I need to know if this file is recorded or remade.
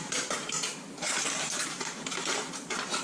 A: remade